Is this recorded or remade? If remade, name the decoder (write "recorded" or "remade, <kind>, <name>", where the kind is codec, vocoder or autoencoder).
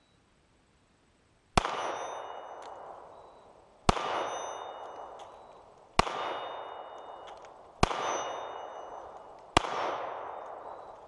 recorded